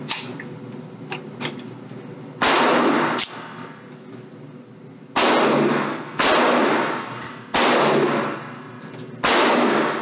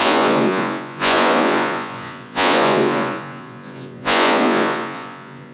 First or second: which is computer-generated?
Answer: second